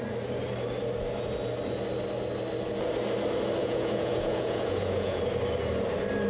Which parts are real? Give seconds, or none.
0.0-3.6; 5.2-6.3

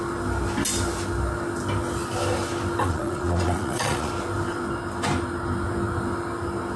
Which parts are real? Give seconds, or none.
0.0-2.8; 4.1-6.8

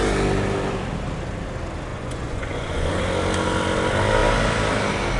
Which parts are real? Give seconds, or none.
0.0-1.9; 3.0-5.2

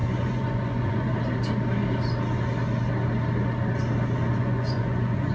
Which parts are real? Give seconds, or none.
1.1-4.3

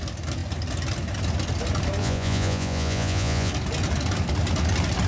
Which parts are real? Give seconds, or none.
0.0-2.0; 3.5-5.1

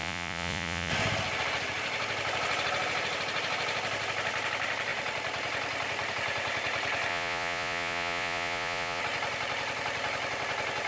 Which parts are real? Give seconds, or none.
0.9-7.1; 9.0-10.9

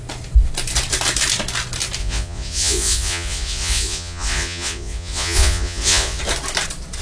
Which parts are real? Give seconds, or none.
0.0-2.0; 6.2-7.0